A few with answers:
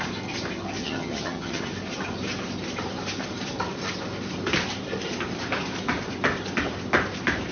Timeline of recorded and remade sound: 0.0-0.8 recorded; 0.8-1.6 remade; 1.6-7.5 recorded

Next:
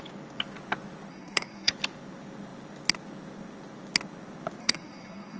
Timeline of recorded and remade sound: 0.0-1.1 recorded; 1.1-1.7 remade; 1.7-4.6 recorded; 4.6-5.4 remade

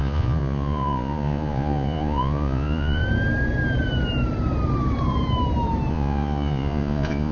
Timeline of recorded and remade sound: 0.0-3.0 remade; 3.0-5.9 recorded; 5.9-7.3 remade

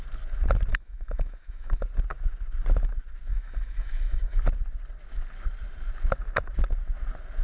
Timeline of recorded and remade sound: 0.0-0.7 recorded; 0.7-1.8 remade; 1.8-3.3 recorded; 3.3-4.4 remade; 4.4-7.4 recorded

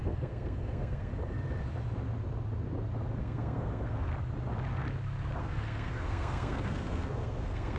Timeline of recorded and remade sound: 0.0-1.1 remade; 1.1-3.2 recorded; 3.2-4.1 remade; 4.1-5.4 recorded; 5.4-7.8 remade

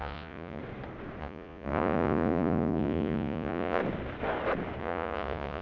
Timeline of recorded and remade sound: 0.0-0.6 remade; 0.6-1.2 recorded; 1.2-3.8 remade; 3.8-4.8 recorded; 4.8-5.6 remade

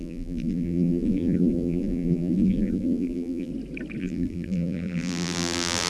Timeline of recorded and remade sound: 0.0-3.5 remade; 3.5-4.0 recorded; 4.0-5.9 remade

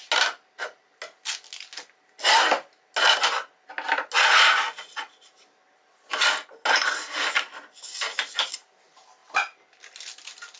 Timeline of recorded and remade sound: 0.0-10.6 recorded